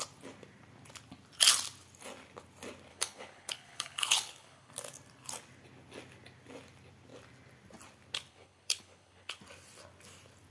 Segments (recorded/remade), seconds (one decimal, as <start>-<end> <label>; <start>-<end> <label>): 0.0-2.9 recorded; 2.9-4.7 remade; 4.7-8.3 recorded; 8.3-9.4 remade; 9.4-10.5 recorded